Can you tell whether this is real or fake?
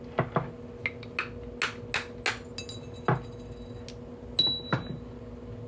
real